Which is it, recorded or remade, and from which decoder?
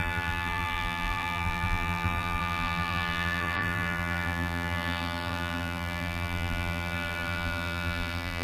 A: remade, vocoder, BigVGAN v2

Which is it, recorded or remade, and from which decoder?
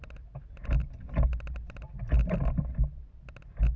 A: recorded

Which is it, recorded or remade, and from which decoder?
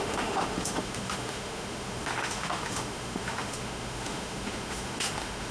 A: remade, autoencoder, DAC-VAE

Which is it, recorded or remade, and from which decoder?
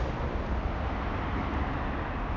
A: recorded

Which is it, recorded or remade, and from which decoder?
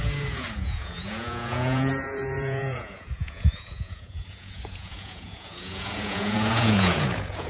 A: remade, vocoder, Vocos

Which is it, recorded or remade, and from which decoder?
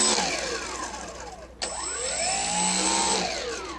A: recorded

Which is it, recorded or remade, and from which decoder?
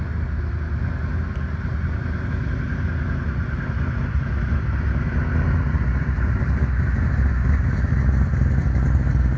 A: recorded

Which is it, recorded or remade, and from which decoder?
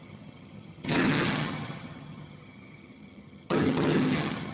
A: remade, vocoder, HiFi-GAN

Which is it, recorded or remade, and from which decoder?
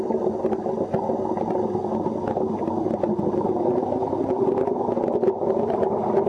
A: recorded